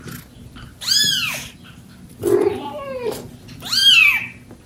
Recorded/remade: recorded